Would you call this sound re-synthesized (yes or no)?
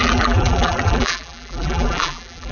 yes